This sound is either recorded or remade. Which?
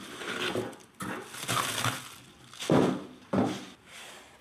recorded